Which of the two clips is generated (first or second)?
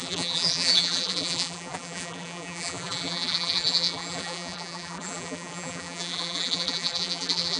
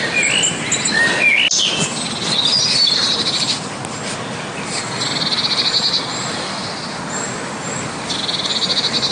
first